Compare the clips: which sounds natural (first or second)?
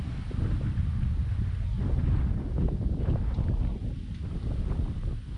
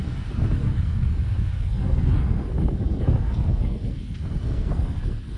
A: first